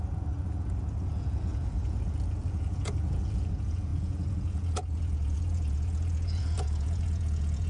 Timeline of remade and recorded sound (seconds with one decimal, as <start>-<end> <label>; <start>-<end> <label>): 0.0-7.7 remade